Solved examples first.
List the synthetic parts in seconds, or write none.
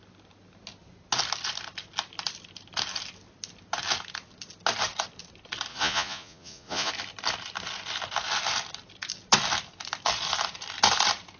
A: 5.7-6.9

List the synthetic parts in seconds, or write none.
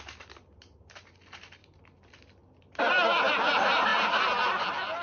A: none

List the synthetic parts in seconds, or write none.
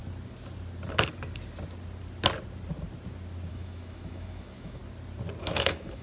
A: 3.5-4.8; 5.4-6.0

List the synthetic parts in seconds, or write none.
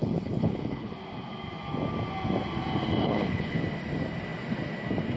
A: 0.0-0.9; 3.0-3.6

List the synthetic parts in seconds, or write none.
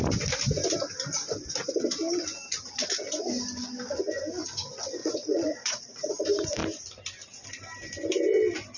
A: 5.0-6.1